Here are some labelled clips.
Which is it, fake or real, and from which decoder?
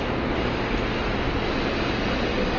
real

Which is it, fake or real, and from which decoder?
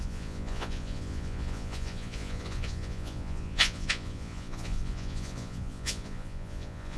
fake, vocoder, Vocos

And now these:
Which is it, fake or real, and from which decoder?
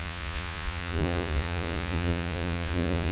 fake, vocoder, Vocos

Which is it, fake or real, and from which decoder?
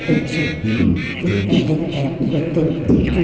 real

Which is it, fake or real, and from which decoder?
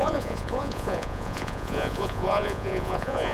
fake, vocoder, Vocos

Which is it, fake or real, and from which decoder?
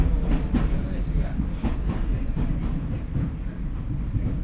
real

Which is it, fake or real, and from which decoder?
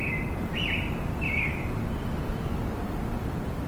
real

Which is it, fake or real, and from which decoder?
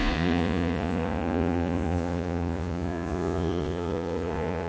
fake, vocoder, Vocos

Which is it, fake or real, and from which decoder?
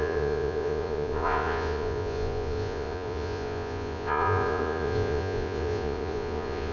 fake, vocoder, Vocos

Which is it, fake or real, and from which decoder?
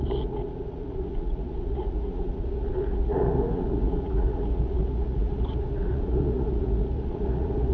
fake, vocoder, Vocos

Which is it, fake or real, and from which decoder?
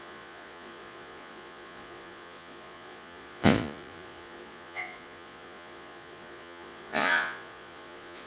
fake, vocoder, Vocos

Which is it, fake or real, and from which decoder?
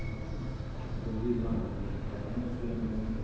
real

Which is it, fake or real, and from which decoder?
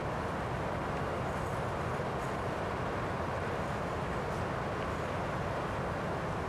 real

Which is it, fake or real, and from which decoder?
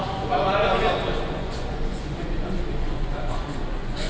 fake, vocoder, Vocos